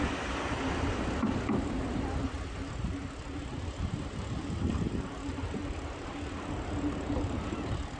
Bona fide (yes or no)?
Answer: yes